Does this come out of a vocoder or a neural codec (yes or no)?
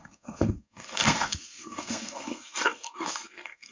yes